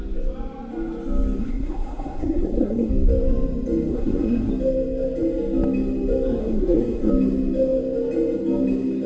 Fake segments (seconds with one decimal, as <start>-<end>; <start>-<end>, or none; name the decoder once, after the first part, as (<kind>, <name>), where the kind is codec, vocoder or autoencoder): 1.4-2.9 (codec, SNAC); 3.9-4.5; 6.4-7.1